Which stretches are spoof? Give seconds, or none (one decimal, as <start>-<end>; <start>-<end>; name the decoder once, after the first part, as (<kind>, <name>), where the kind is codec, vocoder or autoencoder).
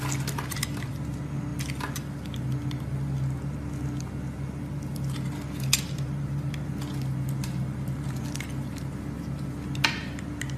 none